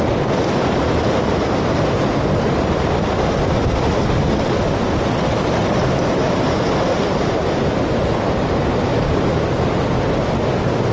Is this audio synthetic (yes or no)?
no